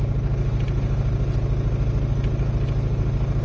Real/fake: real